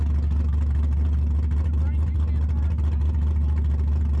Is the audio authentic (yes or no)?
yes